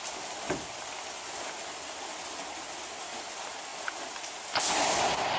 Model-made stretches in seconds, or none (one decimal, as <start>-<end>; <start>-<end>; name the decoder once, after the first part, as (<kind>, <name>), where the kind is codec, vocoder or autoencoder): none